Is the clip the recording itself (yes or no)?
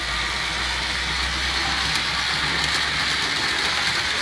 yes